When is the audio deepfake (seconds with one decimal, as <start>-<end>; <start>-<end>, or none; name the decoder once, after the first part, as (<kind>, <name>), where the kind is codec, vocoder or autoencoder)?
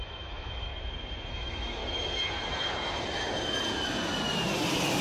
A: 0.0-0.7 (autoencoder, DAC-VAE); 1.3-1.8